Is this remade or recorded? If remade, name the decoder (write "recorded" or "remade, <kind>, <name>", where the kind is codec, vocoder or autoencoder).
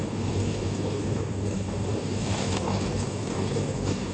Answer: remade, codec, DAC